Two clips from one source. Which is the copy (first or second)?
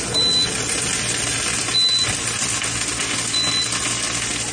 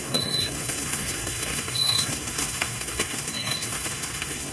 second